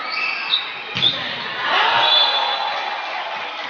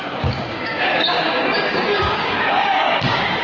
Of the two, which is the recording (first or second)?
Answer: first